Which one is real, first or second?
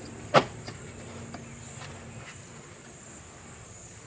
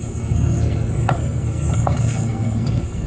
first